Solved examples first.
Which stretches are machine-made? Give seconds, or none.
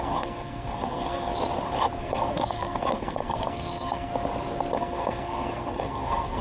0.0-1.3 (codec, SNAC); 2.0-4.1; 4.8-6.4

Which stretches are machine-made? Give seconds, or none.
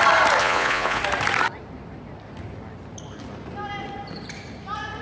0.4-1.0 (vocoder, Vocos)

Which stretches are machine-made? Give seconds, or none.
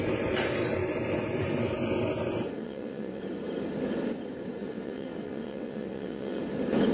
2.6-3.2 (vocoder, WaveNeXt); 4.6-6.4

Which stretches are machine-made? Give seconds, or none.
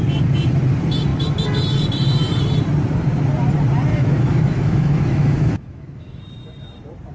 3.9-6.2 (autoencoder, DAC-VAE)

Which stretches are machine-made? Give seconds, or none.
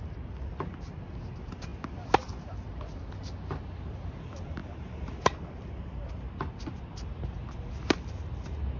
none